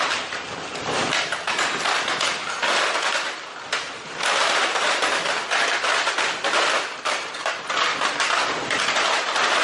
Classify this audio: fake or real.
real